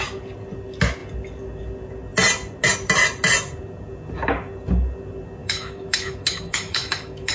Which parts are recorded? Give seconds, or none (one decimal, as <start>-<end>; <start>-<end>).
0.0-5.4